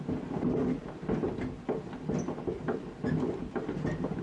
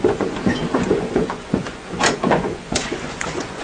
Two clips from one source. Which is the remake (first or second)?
second